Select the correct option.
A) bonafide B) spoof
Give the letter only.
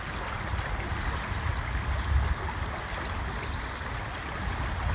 A